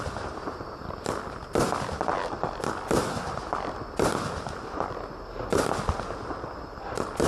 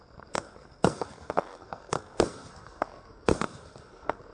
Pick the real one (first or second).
first